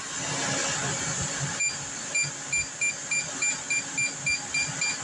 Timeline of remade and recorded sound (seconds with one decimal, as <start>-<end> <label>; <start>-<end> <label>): 0.0-5.0 recorded